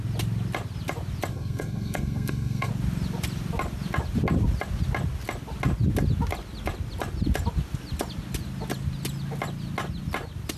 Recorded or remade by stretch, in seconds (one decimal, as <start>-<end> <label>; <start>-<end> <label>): 0.0-1.3 recorded; 1.3-2.7 remade; 2.7-10.6 recorded